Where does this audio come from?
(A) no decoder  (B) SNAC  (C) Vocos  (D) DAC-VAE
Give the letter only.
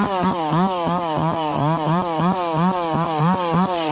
C